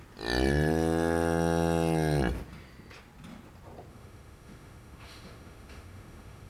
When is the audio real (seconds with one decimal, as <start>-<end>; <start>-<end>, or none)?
0.0-3.9